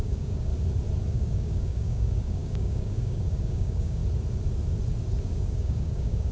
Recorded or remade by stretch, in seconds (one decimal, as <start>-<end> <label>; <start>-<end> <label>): 0.0-0.5 remade; 0.5-1.1 recorded; 1.1-4.0 remade; 4.0-5.2 recorded; 5.2-6.3 remade